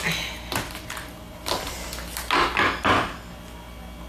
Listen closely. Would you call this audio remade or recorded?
recorded